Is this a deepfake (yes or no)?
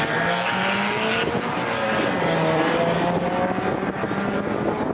no